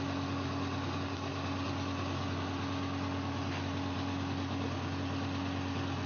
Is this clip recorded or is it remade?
recorded